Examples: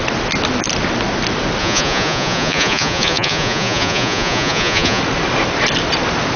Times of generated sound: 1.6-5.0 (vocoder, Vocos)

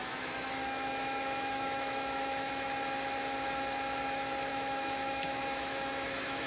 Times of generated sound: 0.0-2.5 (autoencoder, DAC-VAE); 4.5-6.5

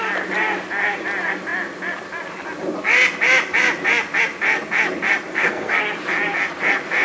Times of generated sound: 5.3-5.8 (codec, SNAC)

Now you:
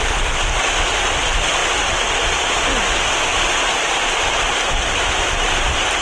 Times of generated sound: 3.3-6.0 (vocoder, BigVGAN v2)